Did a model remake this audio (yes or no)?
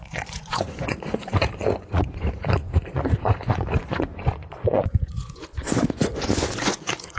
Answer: yes